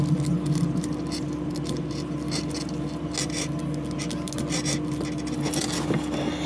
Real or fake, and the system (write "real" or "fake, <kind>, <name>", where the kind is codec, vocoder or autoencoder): real